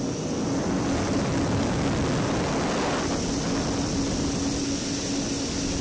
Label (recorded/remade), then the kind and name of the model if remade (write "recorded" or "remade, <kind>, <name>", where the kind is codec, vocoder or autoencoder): recorded